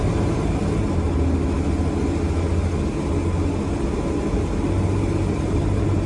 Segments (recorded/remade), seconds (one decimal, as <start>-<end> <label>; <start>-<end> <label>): 0.0-0.6 remade; 0.6-4.3 recorded; 4.3-6.1 remade